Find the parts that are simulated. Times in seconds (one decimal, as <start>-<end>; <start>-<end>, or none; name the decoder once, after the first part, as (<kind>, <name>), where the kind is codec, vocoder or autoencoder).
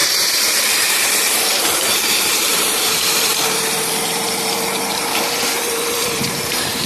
0.0-6.9 (vocoder, BigVGAN v2)